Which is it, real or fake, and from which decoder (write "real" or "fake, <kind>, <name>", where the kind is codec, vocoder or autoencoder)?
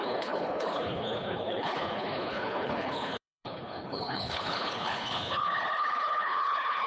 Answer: fake, codec, HILCodec